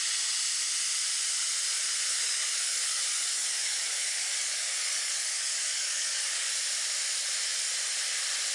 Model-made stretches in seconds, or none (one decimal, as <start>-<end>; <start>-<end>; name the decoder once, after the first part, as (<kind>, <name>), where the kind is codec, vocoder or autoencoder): 2.1-6.5 (codec, DAC)